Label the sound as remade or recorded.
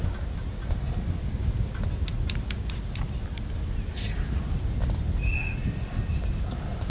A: recorded